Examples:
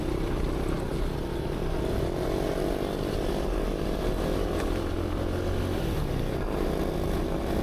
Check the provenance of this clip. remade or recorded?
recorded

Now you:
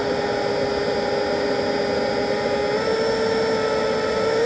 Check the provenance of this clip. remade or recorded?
recorded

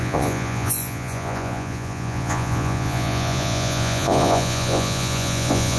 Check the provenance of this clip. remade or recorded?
remade